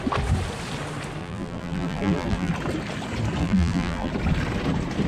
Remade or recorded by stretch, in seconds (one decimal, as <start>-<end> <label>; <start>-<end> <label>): 0.0-1.2 recorded; 1.2-2.5 remade; 2.5-3.4 recorded; 3.4-4.1 remade; 4.1-5.1 recorded